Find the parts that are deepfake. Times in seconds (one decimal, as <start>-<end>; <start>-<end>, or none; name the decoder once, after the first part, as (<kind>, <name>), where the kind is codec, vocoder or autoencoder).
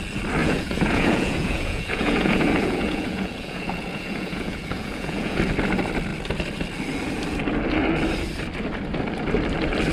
0.4-5.4 (vocoder, Vocos)